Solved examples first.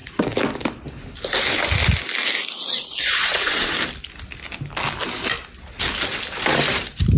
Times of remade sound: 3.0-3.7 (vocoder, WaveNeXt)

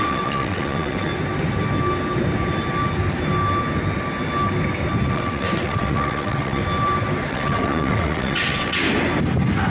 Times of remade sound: 0.0-1.1 (vocoder, WaveNeXt); 5.1-6.6; 7.3-8.8

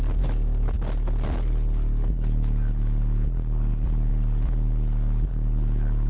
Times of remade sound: none

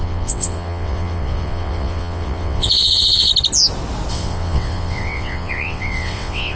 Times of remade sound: 0.0-3.3 (vocoder, WaveNeXt); 4.1-6.6